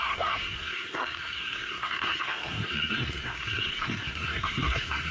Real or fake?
fake